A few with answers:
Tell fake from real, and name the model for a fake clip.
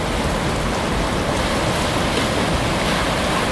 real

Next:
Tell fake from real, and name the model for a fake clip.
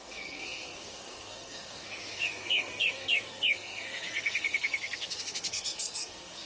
fake, codec, SNAC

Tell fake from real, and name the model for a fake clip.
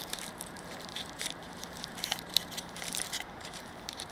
fake, vocoder, BigVGAN v2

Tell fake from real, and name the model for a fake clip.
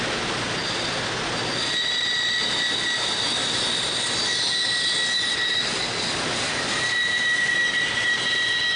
real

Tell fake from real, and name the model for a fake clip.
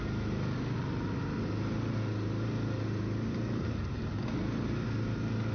real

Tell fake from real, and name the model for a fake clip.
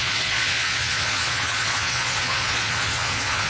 fake, vocoder, Vocos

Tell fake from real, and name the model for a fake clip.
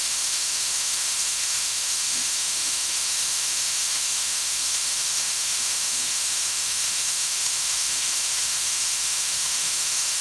fake, autoencoder, DAC-VAE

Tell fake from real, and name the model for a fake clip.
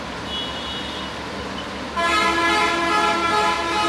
real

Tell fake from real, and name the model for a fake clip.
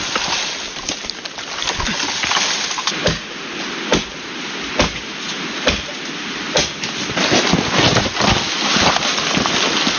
real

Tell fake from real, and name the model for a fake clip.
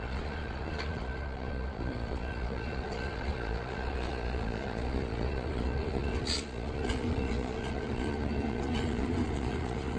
fake, vocoder, Vocos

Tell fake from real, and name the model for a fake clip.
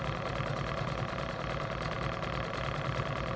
real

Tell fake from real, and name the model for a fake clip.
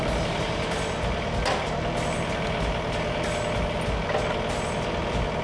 real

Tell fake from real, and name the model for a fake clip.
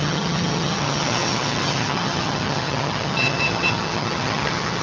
fake, vocoder, HiFi-GAN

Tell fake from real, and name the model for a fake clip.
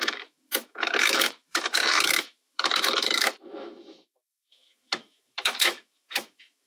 fake, autoencoder, DAC-VAE